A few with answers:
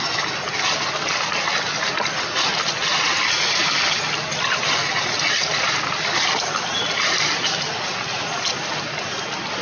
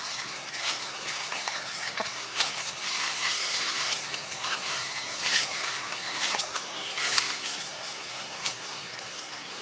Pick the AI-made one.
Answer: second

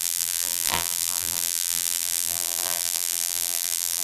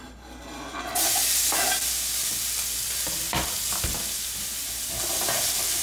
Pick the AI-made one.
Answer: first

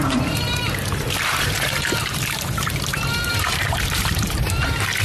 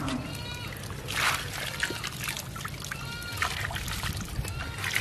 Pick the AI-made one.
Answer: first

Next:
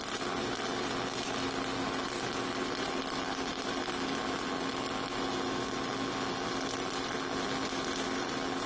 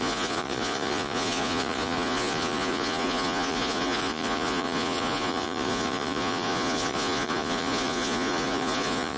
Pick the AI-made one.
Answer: second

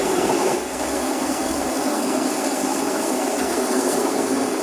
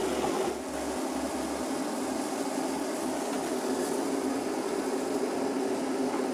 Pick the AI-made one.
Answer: first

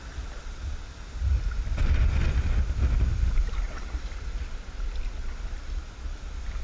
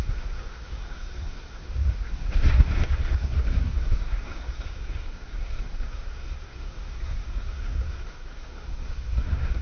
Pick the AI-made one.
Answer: second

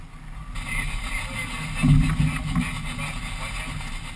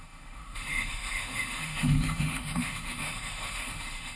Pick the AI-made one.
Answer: second